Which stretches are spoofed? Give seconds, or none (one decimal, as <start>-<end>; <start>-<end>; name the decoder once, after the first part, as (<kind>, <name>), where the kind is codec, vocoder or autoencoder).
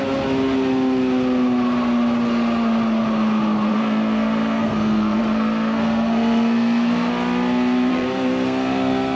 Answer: 3.7-7.1 (codec, SNAC); 7.9-9.2